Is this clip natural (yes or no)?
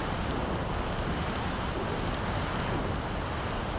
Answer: yes